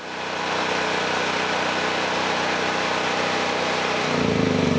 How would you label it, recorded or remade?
remade